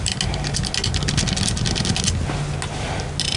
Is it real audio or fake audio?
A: real